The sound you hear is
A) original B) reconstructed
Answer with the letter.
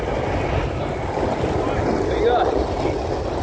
A